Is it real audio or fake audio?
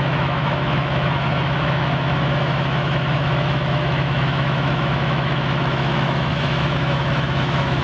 fake